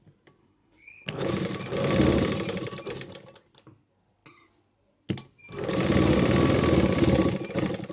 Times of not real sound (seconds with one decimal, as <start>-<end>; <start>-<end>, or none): 0.4-1.3

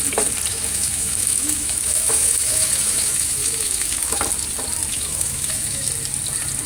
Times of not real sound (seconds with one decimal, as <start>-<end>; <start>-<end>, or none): 0.5-4.2; 4.9-5.9

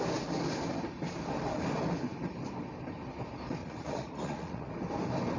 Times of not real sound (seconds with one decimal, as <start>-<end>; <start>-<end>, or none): 3.6-4.7